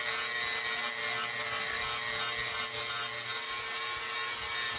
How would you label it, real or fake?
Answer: real